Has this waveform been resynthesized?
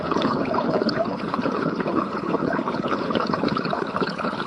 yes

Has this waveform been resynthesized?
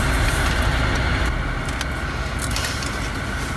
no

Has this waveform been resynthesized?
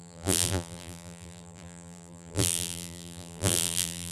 yes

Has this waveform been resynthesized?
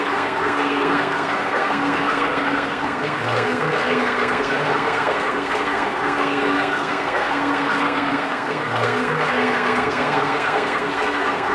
yes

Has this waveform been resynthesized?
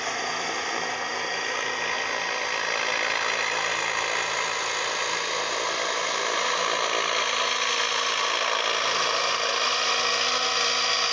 no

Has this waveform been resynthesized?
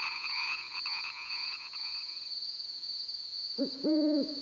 yes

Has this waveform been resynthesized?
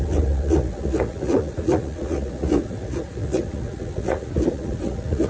yes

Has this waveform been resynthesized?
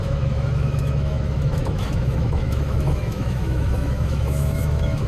yes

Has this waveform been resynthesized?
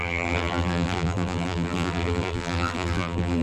yes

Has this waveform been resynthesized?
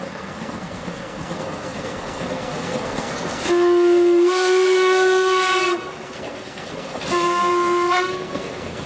yes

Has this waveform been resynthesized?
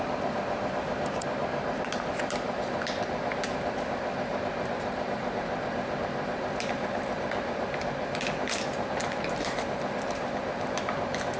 yes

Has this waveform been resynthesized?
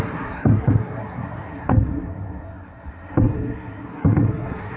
yes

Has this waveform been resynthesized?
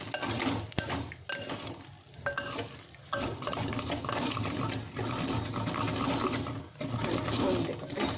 no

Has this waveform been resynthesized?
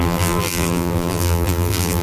yes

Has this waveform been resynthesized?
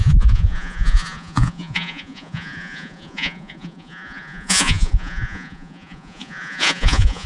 yes